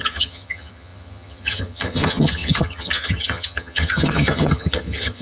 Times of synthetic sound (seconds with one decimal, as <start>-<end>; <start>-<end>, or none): 0.0-5.2